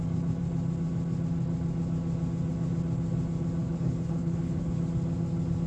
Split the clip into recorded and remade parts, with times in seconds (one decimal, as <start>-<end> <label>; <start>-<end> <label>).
0.0-3.6 recorded; 3.6-4.8 remade; 4.8-5.7 recorded